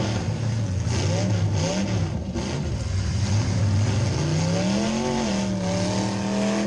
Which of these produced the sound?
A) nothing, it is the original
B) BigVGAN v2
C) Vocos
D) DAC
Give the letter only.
A